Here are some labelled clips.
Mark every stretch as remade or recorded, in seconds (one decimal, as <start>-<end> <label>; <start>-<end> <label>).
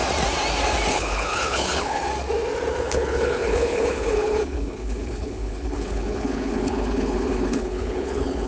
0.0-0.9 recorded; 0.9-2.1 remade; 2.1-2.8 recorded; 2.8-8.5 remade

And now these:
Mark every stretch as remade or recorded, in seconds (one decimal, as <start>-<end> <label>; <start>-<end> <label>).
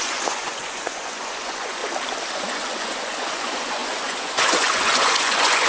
0.0-1.8 remade; 1.8-2.3 recorded; 2.3-5.7 remade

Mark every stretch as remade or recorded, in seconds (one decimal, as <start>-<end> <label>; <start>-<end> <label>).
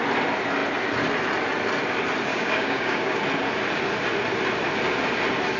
0.0-2.3 recorded; 2.3-3.2 remade; 3.2-5.6 recorded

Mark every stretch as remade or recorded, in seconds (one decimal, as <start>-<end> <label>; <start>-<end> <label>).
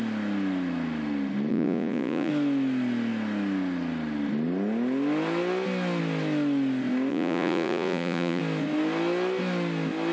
0.0-1.5 recorded; 1.5-2.3 remade; 2.3-7.1 recorded; 7.1-8.4 remade; 8.4-10.1 recorded